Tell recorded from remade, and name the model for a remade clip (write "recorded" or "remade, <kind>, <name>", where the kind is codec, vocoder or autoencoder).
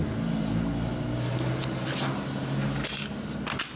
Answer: recorded